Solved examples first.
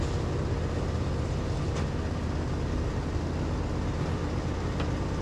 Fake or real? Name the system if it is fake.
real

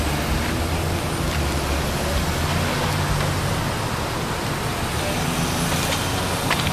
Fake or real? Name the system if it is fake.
real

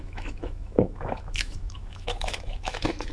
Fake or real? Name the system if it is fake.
fake, autoencoder, DAC-VAE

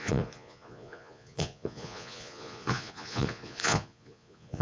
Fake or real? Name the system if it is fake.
fake, vocoder, Vocos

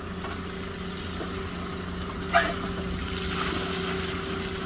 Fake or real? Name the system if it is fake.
real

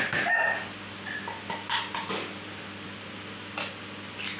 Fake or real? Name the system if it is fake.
real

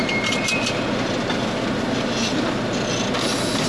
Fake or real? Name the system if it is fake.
real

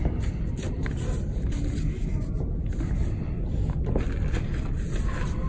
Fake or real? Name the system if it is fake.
real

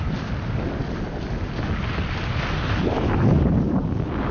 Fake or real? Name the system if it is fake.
real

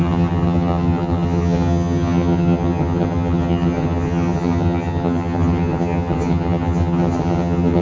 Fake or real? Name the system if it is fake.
fake, vocoder, HiFi-GAN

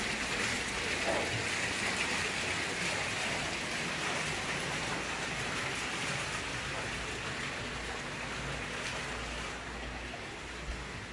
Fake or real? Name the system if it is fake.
real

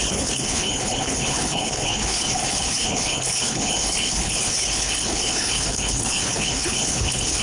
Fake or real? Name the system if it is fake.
fake, codec, HILCodec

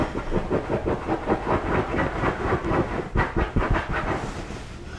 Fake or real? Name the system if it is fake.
real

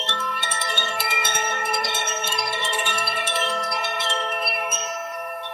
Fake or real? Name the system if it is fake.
fake, codec, SNAC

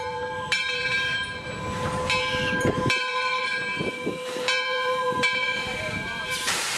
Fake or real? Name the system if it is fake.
fake, vocoder, BigVGAN v2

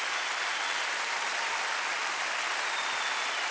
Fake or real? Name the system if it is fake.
real